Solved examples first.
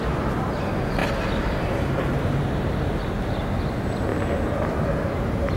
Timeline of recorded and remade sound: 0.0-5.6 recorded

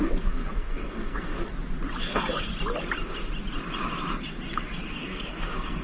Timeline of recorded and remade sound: 0.0-1.5 remade; 1.5-2.0 recorded; 2.0-2.5 remade; 2.5-4.9 recorded; 4.9-5.8 remade

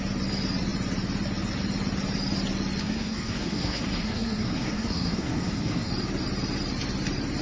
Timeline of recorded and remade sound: 0.0-2.8 recorded; 2.8-5.9 remade; 5.9-7.4 recorded

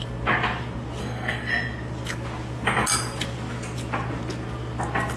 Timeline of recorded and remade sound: 0.0-1.0 recorded; 1.0-1.5 remade; 1.5-5.2 recorded

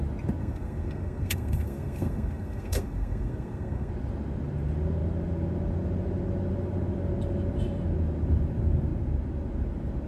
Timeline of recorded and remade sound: 0.0-0.4 recorded; 0.4-3.9 remade; 3.9-10.1 recorded

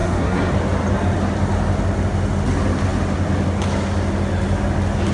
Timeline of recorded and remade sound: 0.0-0.5 remade; 0.5-5.1 recorded

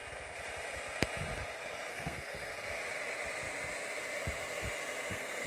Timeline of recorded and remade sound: 0.0-1.9 recorded; 1.9-2.5 remade; 2.5-5.1 recorded; 5.1-5.5 remade